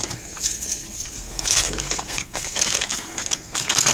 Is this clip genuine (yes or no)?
no